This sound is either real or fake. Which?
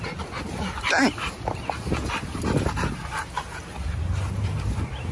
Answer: real